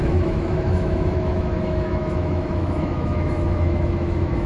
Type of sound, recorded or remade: remade